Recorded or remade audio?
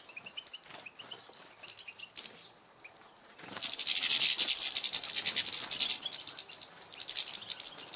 recorded